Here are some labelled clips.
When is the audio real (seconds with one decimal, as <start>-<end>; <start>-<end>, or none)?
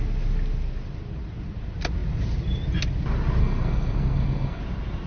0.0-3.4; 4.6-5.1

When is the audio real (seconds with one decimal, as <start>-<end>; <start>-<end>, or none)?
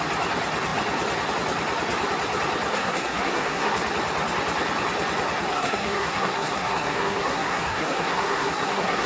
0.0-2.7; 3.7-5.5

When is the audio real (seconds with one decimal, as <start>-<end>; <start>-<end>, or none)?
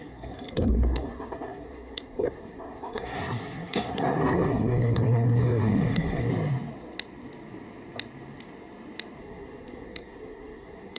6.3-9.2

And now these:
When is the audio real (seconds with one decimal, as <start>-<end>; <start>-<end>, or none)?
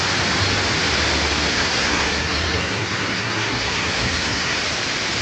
0.0-1.5; 4.6-5.2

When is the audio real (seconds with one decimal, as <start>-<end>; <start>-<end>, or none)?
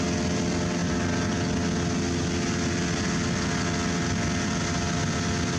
0.0-5.6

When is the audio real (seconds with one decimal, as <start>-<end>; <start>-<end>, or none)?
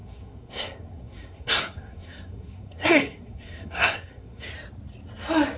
4.5-5.6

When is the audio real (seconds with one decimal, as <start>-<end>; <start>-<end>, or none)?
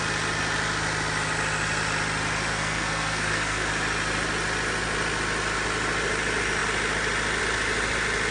0.0-2.5; 3.7-8.3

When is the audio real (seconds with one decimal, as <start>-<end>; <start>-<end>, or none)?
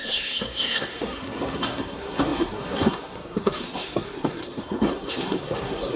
none